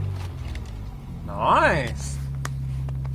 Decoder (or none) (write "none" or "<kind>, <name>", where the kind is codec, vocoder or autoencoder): none